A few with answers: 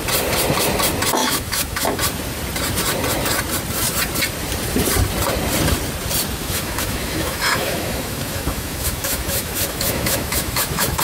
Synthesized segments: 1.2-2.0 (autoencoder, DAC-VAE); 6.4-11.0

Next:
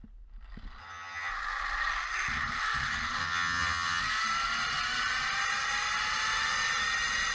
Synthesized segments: 0.8-1.3 (vocoder, HiFi-GAN); 3.2-4.0

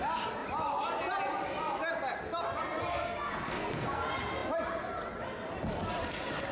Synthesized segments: 2.9-4.0 (codec, SNAC)

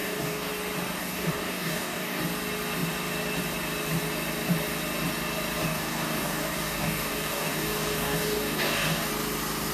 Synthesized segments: 0.0-0.5 (codec, DAC); 1.0-2.2; 5.6-9.1

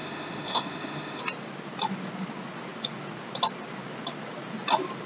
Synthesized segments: 0.0-1.2 (autoencoder, DAC-VAE)